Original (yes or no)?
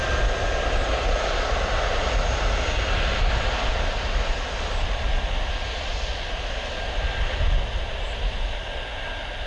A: yes